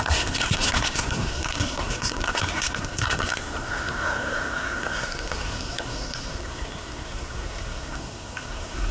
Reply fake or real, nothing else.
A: fake